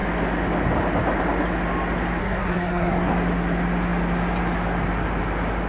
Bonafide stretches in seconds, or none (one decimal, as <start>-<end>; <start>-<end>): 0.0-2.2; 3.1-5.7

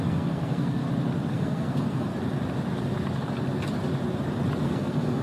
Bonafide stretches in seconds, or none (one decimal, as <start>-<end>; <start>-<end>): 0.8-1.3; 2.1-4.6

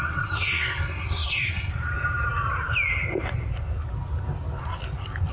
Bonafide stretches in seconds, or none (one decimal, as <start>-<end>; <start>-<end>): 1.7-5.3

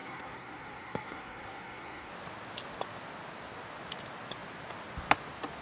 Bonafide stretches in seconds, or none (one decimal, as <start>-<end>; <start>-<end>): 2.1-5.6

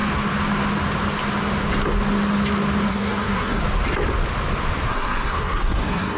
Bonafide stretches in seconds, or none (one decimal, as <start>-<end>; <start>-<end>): 0.0-2.9; 3.6-4.9

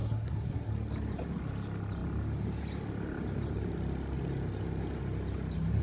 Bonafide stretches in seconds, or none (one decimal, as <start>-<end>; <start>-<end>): 0.7-5.8

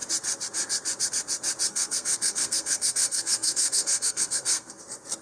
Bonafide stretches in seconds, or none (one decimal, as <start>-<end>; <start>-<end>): 0.0-1.7; 4.8-5.2